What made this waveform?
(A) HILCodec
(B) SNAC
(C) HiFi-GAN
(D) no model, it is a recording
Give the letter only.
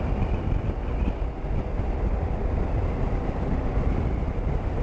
D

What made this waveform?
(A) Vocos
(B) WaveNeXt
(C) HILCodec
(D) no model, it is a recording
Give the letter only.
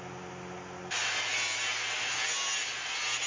D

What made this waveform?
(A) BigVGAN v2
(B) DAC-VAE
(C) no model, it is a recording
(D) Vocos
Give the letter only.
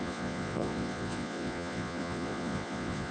D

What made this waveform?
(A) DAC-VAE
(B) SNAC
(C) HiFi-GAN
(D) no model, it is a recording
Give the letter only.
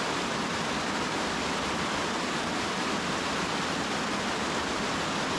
D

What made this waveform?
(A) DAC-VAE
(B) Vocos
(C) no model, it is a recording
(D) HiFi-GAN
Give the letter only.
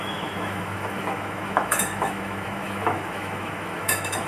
A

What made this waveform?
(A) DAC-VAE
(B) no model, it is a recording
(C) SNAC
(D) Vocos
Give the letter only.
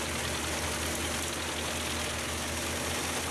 B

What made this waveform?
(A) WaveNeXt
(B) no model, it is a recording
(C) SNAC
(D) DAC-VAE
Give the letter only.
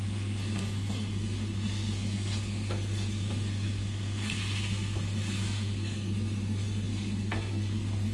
C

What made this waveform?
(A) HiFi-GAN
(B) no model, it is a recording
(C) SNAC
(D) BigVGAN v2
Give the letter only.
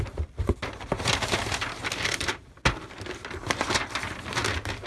B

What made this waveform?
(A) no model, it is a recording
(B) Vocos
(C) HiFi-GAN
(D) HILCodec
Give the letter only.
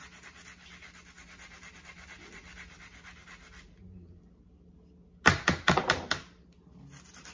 A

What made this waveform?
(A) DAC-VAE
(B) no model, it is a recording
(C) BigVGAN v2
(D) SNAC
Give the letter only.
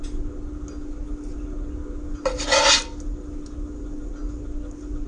B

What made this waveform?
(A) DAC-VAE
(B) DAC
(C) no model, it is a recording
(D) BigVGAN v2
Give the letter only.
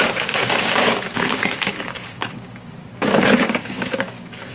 B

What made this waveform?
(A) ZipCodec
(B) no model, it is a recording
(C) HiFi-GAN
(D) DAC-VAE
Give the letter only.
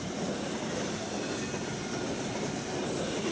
B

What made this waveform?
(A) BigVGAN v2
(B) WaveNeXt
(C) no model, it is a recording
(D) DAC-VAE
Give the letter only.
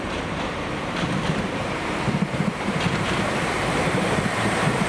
A